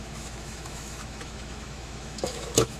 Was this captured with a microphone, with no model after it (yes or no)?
no